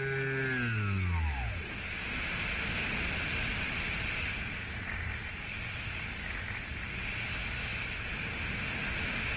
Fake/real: real